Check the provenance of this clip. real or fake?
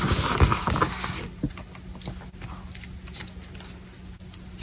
real